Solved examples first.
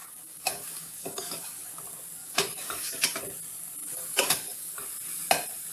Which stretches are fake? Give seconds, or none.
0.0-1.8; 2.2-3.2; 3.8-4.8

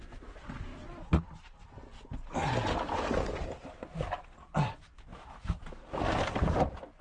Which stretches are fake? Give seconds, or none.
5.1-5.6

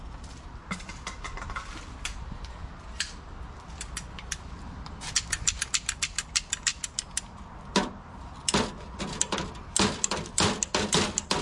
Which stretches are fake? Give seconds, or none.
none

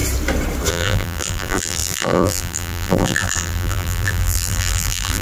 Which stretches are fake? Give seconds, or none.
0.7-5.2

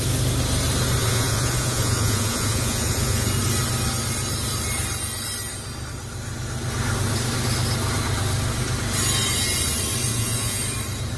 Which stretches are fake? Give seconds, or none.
1.0-3.3; 10.1-10.6

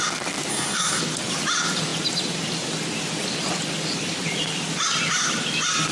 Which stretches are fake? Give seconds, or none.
0.5-1.0